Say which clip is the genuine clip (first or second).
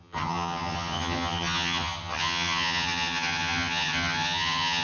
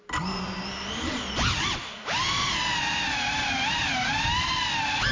second